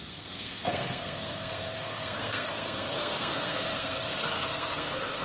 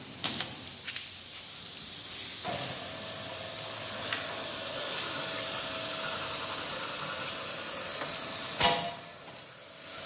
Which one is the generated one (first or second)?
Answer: first